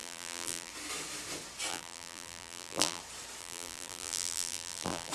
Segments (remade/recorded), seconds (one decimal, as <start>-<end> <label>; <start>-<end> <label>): 0.0-0.7 remade; 0.7-1.7 recorded; 1.7-3.0 remade; 3.0-3.4 recorded; 3.4-5.1 remade